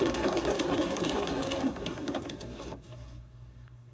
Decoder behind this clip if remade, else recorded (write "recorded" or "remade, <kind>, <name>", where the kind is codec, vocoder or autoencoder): remade, codec, SNAC